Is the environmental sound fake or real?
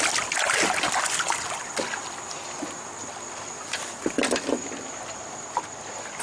real